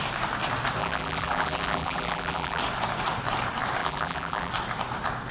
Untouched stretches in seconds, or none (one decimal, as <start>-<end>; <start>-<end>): 0.0-0.8; 2.6-3.8; 4.5-5.3